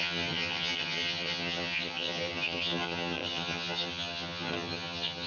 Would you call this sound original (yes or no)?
no